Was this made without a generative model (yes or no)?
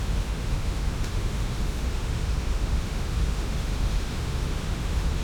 no